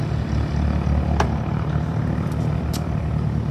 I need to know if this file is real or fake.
real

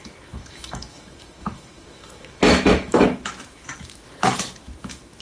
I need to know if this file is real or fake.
fake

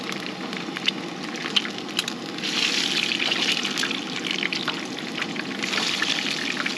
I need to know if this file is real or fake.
real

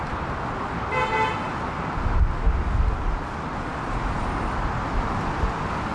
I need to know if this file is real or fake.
real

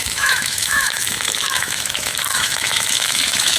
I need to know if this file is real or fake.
fake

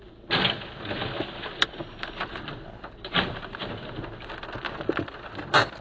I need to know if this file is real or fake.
real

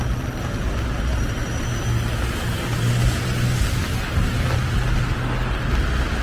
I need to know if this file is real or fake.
real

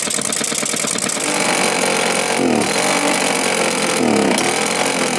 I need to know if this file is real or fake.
real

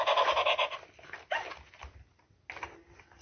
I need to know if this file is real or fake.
real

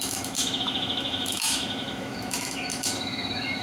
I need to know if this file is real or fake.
fake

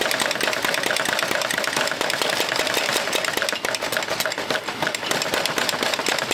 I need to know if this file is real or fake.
real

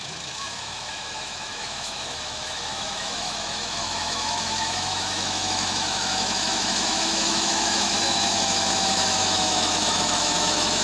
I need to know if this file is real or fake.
fake